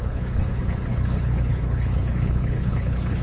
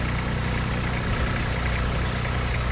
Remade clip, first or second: first